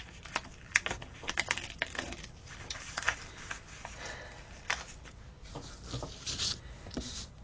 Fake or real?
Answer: real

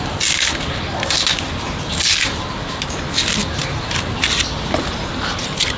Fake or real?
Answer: real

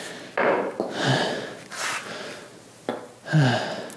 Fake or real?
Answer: real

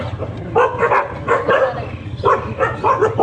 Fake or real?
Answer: real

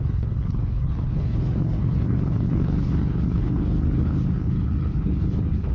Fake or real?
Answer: fake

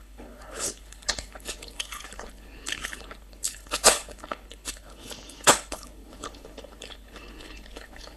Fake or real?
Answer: fake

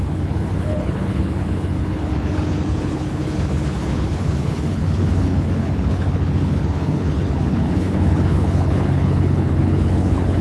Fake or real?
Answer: fake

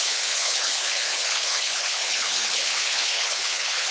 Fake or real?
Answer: fake